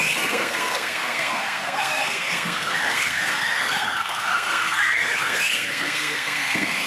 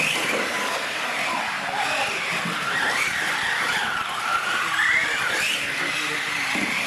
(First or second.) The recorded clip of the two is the second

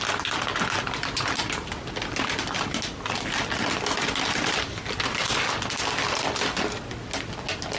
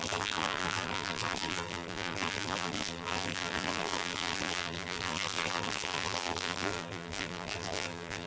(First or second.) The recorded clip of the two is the first